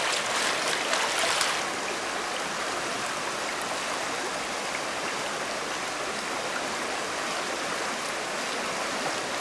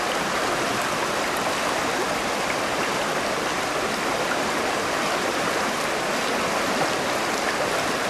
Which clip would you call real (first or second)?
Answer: first